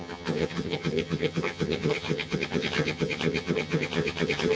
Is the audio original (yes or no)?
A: no